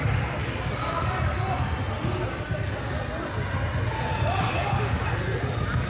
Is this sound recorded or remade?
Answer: recorded